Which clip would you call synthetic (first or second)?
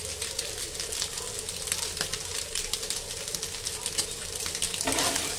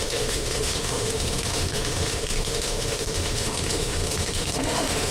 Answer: second